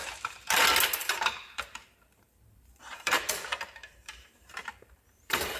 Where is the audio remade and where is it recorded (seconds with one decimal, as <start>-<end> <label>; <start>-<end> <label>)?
0.0-0.6 remade; 0.6-1.0 recorded; 1.0-3.3 remade; 3.3-3.8 recorded; 3.8-5.6 remade